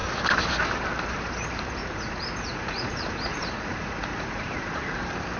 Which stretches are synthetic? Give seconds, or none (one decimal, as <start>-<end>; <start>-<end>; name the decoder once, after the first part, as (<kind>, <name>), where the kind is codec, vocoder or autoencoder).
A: 1.8-5.0 (vocoder, Vocos)